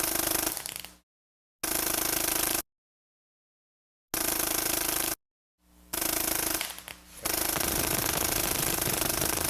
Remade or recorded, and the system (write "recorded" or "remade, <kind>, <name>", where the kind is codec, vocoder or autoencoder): recorded